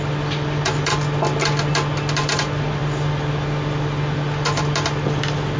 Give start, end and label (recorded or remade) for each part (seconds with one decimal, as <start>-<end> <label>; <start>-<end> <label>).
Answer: 0.0-5.6 recorded